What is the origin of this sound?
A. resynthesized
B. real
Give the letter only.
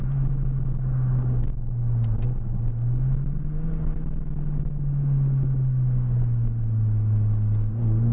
B